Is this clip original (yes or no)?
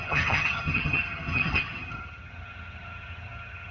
no